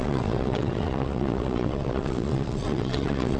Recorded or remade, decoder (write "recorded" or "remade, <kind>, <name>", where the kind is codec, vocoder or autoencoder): remade, vocoder, WaveNeXt